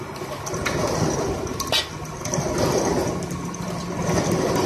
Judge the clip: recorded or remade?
recorded